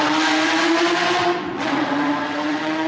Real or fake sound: fake